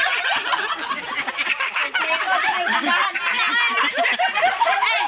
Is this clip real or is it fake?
real